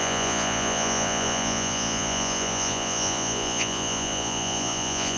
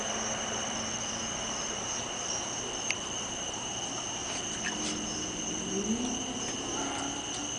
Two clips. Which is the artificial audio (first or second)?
first